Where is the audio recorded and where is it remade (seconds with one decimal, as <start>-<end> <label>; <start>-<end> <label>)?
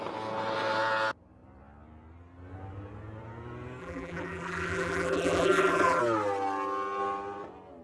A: 0.0-3.8 recorded; 3.8-6.0 remade; 6.0-7.8 recorded